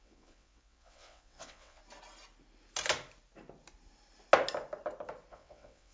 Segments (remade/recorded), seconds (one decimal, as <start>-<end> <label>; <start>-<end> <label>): 0.0-1.8 remade; 1.8-5.3 recorded; 5.3-5.9 remade